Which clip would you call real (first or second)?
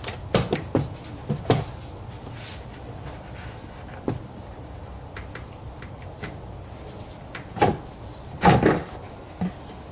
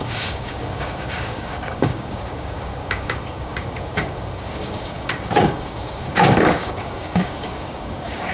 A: first